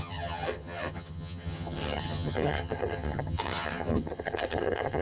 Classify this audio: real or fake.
fake